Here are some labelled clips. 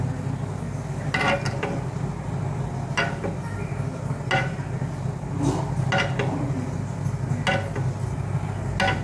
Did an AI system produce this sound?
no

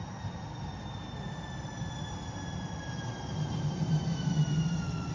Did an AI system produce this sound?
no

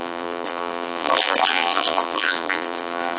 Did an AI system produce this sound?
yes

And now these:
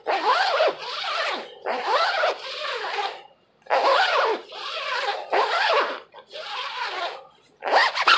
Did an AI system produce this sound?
yes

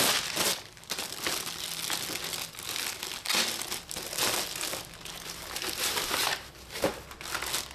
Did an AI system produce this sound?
no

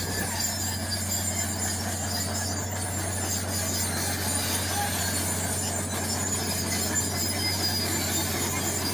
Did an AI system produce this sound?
no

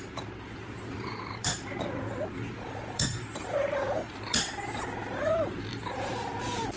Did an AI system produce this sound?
yes